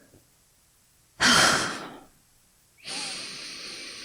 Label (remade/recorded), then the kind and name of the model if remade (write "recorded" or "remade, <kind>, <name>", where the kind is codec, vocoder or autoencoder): recorded